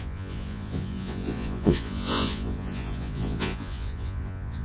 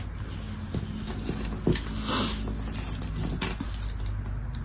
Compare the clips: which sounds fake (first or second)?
first